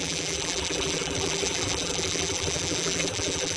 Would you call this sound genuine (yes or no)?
no